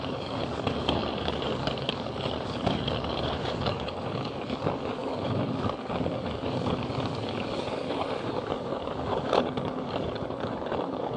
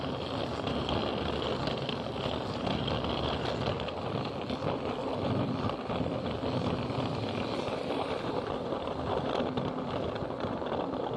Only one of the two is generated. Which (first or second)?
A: first